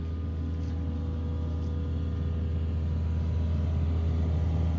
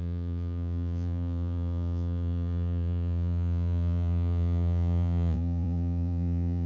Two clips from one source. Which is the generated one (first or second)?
second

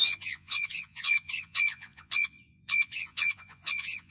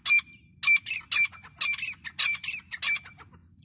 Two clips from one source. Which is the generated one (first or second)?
first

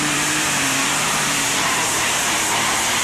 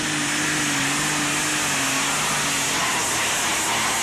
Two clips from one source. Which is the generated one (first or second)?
first